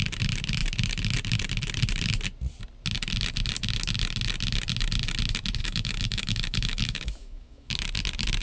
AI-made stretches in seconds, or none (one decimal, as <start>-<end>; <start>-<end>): 5.6-7.7

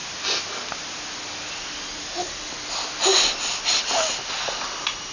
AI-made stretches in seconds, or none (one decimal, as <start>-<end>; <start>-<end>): none

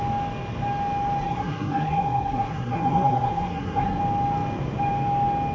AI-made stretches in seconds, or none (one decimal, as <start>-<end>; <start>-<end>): 1.2-4.0

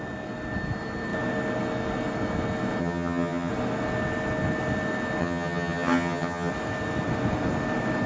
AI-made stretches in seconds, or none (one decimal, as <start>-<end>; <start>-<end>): 2.8-3.5; 5.2-6.5

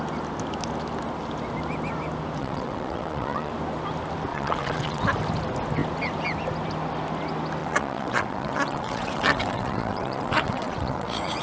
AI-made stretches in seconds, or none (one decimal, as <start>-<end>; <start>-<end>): 2.4-3.5; 4.3-5.0; 7.6-11.4

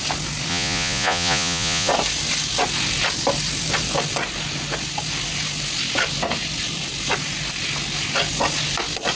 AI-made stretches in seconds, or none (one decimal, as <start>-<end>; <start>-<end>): 0.5-1.9

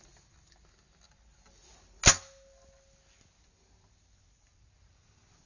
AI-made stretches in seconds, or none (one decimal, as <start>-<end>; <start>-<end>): none

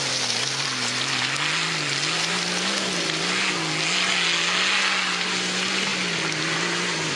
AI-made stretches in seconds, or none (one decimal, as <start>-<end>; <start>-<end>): none